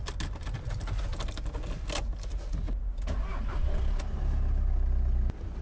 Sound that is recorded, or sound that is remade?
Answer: recorded